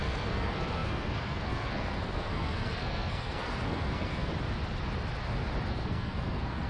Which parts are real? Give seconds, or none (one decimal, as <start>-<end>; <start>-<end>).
4.3-5.7